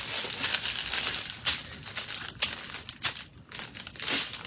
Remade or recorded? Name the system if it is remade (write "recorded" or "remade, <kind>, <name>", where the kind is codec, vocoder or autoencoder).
recorded